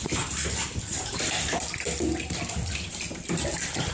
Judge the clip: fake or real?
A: fake